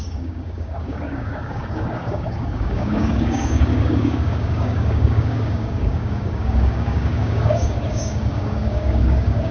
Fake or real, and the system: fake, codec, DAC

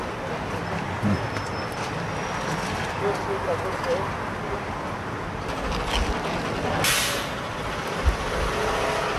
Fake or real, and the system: real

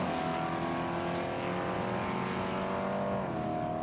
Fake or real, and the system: real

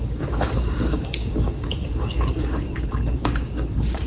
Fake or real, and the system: fake, codec, DAC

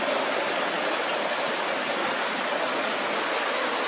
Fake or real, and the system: real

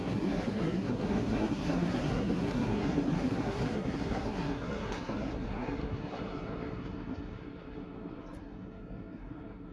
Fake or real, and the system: fake, codec, SNAC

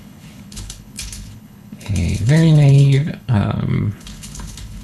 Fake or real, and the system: fake, codec, HILCodec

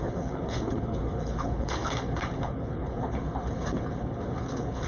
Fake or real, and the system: fake, codec, HILCodec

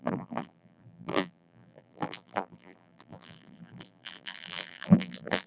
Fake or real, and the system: fake, vocoder, BigVGAN v2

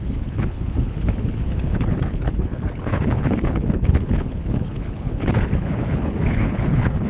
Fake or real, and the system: fake, codec, HILCodec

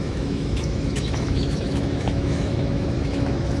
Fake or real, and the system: fake, autoencoder, DAC-VAE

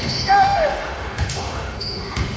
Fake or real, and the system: fake, autoencoder, DAC-VAE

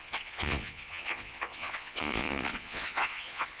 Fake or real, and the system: fake, vocoder, Vocos